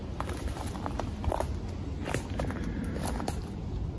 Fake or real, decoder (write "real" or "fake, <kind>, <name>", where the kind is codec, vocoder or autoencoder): real